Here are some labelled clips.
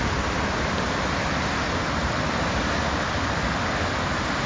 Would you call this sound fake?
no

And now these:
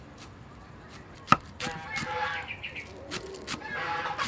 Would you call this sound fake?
no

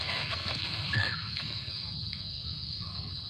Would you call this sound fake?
yes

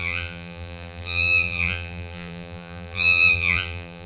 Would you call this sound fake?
yes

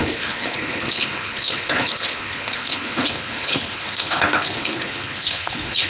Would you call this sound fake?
yes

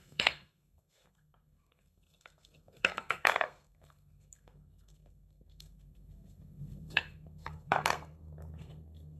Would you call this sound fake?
yes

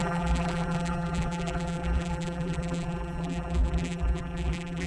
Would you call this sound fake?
yes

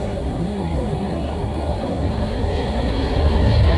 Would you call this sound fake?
yes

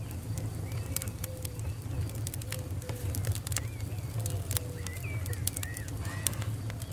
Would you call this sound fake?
no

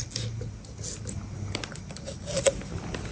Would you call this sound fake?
no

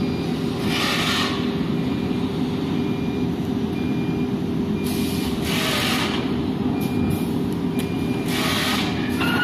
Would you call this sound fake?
no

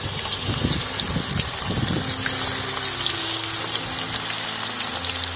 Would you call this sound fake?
no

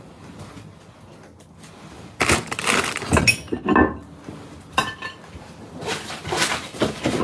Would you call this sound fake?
no